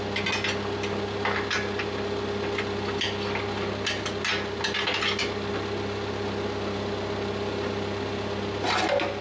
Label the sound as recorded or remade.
recorded